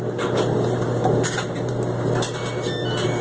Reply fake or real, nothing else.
real